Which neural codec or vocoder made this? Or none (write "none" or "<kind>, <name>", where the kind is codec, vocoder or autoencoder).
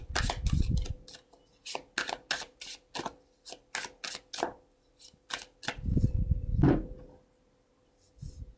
none